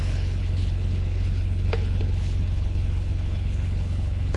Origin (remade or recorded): remade